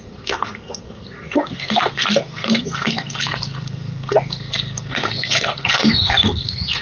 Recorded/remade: remade